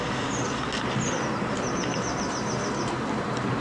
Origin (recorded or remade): recorded